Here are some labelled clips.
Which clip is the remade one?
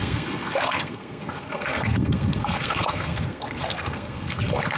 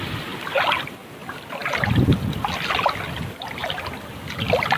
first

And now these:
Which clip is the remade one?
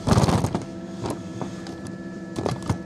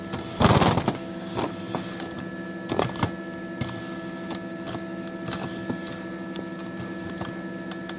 first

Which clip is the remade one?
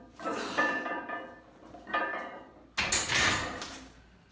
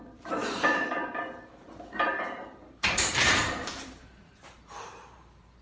second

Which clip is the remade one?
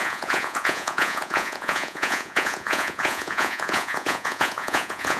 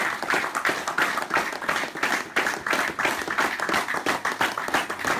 first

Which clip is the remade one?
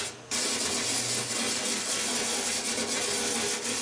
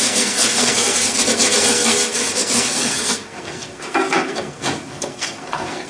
second